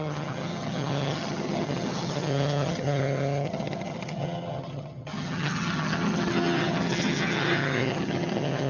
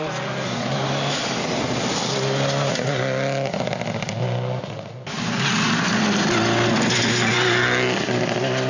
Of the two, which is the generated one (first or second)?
first